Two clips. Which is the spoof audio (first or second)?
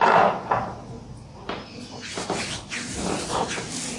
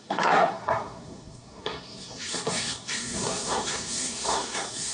second